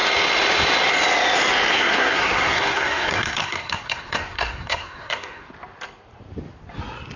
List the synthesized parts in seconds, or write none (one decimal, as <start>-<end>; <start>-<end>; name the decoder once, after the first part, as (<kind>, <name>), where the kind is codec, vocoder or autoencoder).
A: 1.7-5.5 (codec, SNAC)